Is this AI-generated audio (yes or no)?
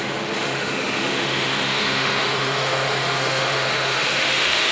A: yes